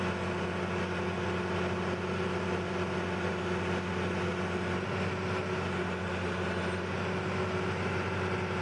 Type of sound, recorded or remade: recorded